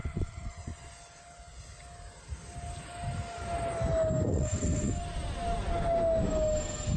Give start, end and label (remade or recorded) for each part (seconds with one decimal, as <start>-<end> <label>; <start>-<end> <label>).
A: 0.0-0.9 remade; 0.9-4.3 recorded; 4.3-4.9 remade; 4.9-7.0 recorded